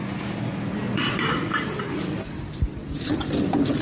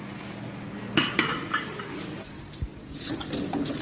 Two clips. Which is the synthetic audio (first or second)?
first